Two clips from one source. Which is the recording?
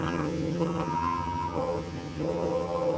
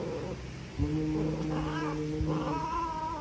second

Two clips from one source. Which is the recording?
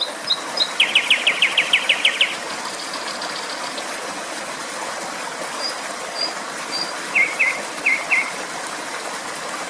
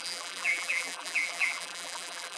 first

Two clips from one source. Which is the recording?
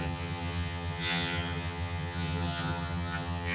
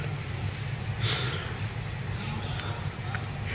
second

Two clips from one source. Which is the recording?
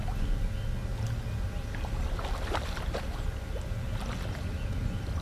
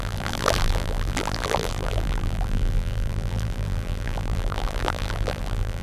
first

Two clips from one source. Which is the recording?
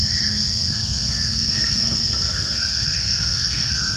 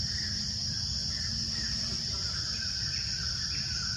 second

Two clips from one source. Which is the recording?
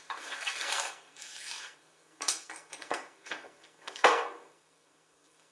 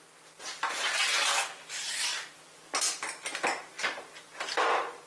second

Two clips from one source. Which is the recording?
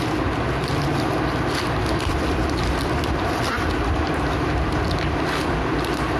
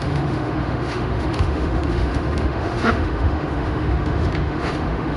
first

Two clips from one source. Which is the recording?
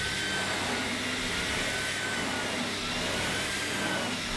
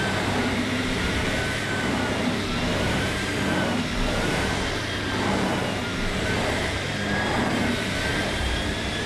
first